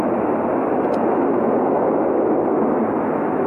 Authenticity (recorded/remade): recorded